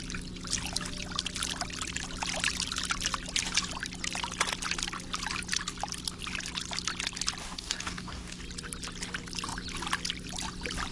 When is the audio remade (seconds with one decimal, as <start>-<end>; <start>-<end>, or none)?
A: 7.4-8.4